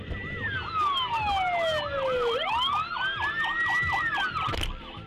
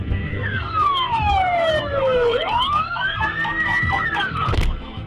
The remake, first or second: second